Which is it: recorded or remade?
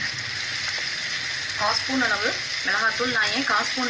recorded